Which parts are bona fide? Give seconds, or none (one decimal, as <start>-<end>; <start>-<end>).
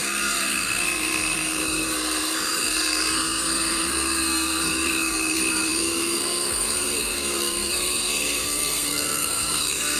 none